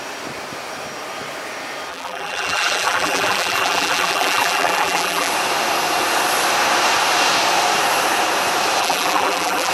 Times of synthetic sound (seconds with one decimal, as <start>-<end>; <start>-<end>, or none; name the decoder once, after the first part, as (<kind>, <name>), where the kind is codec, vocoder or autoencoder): 1.9-5.3 (vocoder, BigVGAN v2); 8.8-9.7